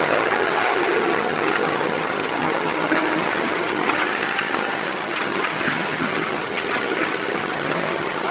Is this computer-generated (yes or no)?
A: yes